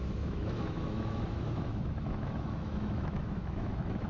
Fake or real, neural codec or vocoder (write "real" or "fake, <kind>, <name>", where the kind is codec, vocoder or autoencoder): fake, autoencoder, DAC-VAE